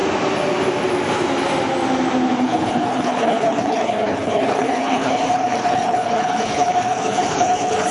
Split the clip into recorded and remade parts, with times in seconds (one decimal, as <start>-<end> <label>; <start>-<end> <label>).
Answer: 0.0-2.4 recorded; 2.4-7.9 remade